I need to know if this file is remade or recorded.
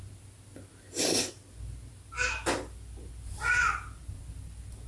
recorded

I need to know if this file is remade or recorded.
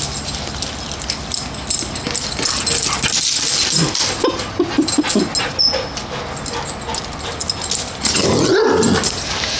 recorded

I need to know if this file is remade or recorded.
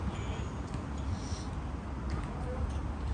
recorded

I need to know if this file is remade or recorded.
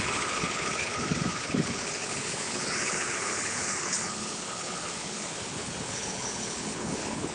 remade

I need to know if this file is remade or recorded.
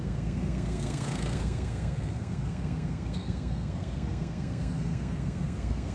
remade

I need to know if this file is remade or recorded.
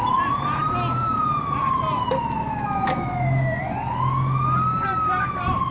recorded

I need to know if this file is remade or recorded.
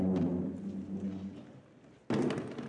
recorded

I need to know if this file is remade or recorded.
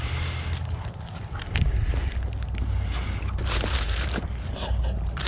remade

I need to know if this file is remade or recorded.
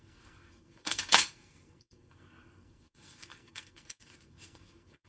remade